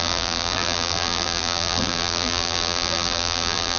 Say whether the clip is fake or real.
fake